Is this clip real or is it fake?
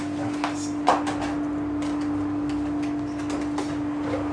real